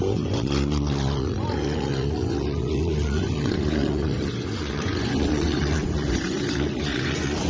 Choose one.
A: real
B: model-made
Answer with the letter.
B